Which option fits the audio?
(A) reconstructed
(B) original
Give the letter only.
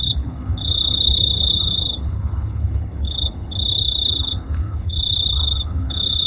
A